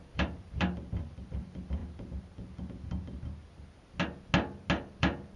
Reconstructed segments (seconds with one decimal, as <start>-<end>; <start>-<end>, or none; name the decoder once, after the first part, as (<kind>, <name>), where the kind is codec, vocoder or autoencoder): 0.0-1.8 (vocoder, BigVGAN v2); 5.0-5.4